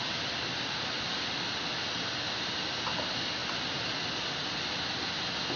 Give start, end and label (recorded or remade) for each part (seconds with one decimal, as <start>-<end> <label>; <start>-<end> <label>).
0.0-5.6 recorded